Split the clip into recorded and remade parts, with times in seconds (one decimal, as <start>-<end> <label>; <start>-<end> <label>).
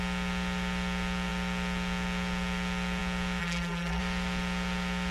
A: 0.0-3.4 recorded; 3.4-4.0 remade; 4.0-5.1 recorded